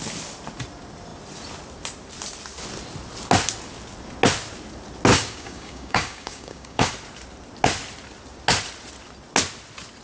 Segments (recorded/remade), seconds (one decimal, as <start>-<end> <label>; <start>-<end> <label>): 0.0-5.1 recorded; 5.1-6.9 remade; 6.9-10.0 recorded